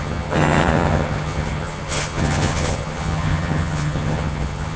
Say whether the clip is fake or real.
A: fake